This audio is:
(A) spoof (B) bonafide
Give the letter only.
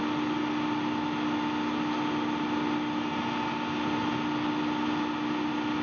B